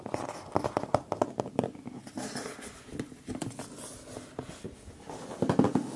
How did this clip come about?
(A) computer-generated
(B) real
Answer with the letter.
B